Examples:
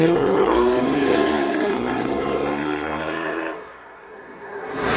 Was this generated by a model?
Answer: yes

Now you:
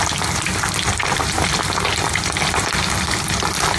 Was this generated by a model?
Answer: no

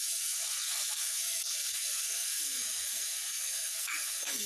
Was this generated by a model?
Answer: yes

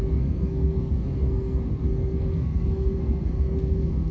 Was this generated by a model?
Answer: yes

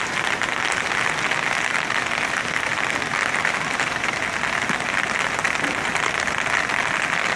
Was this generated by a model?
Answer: no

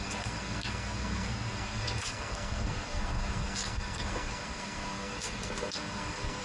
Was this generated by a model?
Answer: yes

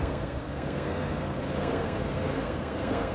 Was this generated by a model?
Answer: yes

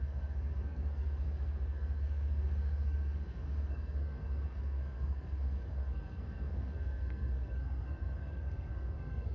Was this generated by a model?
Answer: yes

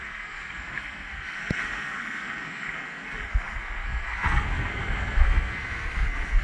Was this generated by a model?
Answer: yes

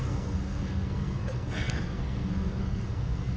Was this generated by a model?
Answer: yes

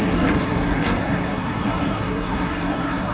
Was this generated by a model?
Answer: yes